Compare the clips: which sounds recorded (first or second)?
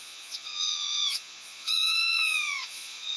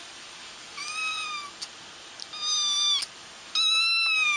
second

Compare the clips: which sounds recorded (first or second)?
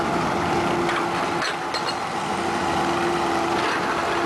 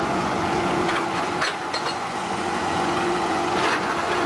first